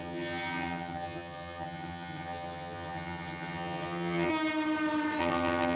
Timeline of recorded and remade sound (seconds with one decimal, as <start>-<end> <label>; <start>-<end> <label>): 0.0-4.3 remade; 4.3-5.2 recorded; 5.2-5.8 remade